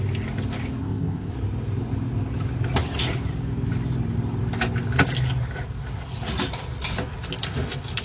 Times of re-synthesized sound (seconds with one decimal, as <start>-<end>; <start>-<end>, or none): 0.8-1.3

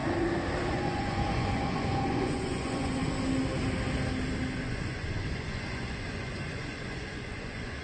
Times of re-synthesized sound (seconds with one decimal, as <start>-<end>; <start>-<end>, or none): 0.7-3.0; 4.6-7.8

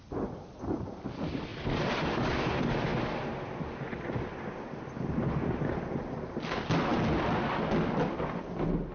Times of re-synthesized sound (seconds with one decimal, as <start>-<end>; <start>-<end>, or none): 1.5-2.1

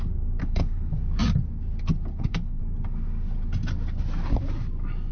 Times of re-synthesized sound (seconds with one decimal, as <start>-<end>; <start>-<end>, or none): 0.4-0.9; 2.1-2.6

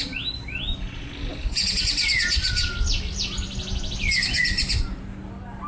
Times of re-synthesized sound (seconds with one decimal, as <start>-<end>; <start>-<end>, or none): none